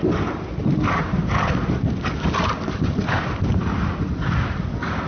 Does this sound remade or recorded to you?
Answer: recorded